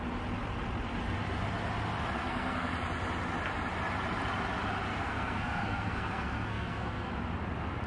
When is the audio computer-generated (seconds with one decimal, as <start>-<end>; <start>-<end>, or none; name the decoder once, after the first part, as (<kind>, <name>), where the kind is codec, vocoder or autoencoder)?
2.2-2.7 (codec, SNAC); 4.9-7.1